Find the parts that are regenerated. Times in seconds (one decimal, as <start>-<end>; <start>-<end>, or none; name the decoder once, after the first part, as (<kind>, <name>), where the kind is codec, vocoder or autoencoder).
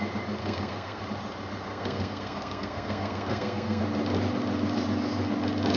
0.4-1.0 (codec, SNAC); 1.7-3.8